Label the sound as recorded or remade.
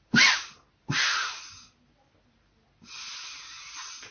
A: recorded